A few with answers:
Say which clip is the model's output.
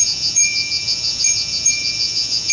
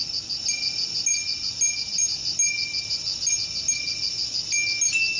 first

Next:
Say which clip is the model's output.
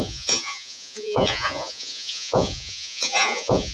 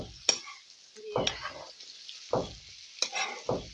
first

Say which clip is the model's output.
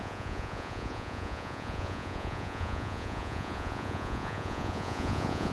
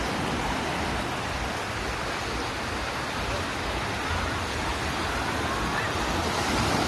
first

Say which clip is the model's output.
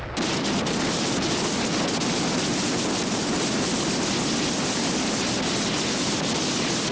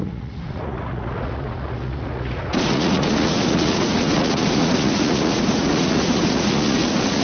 second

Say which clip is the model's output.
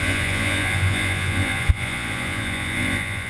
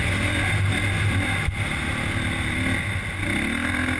first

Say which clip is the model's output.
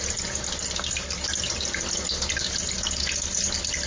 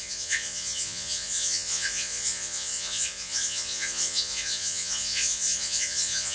second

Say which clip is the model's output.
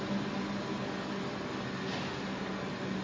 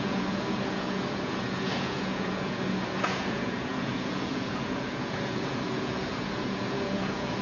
second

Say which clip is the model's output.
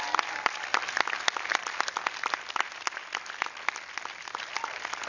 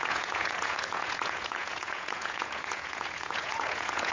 second